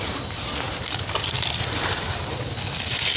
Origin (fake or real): real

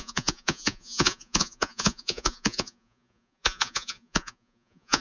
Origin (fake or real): fake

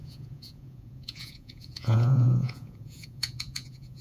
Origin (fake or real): fake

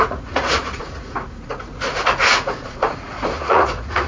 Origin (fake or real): fake